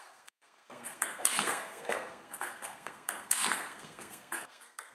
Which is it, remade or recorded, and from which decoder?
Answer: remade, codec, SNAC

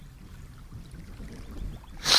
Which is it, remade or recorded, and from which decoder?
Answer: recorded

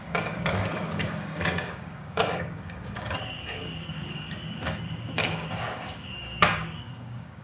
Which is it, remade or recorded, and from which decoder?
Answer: remade, codec, DAC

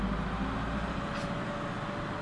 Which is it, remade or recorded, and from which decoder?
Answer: recorded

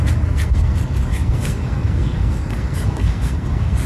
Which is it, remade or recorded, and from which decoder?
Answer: remade, codec, SNAC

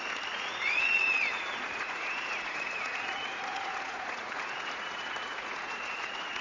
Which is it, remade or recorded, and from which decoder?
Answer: remade, vocoder, Vocos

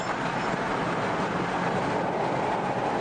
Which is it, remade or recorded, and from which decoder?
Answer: recorded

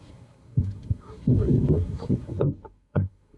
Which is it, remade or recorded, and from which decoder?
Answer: remade, codec, SNAC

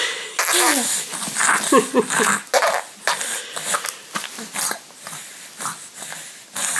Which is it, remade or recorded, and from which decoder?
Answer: recorded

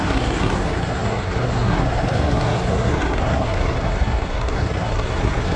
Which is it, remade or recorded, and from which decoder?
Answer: remade, codec, SNAC